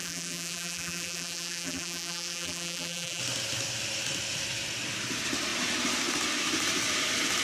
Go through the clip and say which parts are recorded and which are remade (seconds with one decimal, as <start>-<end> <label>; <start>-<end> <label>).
0.0-3.2 remade; 3.2-7.4 recorded

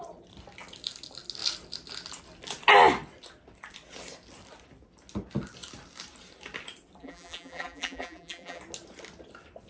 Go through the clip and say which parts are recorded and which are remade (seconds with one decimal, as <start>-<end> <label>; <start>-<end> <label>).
0.0-7.0 recorded; 7.0-8.6 remade; 8.6-9.7 recorded

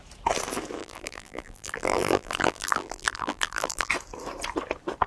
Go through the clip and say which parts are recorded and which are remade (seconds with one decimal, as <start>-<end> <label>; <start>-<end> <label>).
0.0-0.8 recorded; 0.8-3.9 remade; 3.9-5.1 recorded

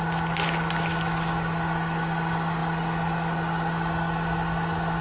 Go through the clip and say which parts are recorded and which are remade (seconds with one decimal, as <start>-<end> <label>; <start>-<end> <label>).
0.0-5.0 recorded

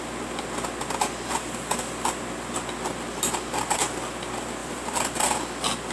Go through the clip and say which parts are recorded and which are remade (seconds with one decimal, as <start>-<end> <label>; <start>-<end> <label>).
0.0-4.6 recorded; 4.6-5.1 remade; 5.1-5.9 recorded